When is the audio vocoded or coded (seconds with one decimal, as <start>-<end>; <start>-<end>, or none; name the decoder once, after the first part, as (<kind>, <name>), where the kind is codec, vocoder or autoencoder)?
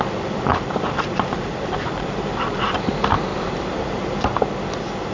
0.5-2.9 (vocoder, BigVGAN v2); 3.3-4.4